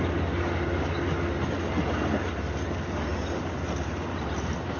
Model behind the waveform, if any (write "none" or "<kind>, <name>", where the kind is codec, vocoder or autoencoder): none